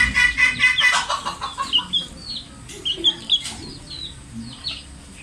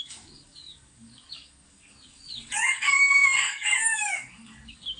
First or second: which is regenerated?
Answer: second